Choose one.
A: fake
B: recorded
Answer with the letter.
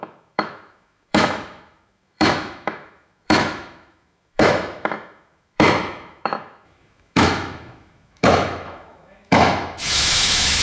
A